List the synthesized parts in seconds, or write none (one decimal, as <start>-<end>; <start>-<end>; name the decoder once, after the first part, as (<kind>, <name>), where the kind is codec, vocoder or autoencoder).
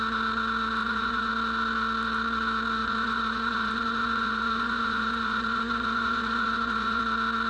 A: 0.8-1.3 (vocoder, Vocos); 2.8-7.0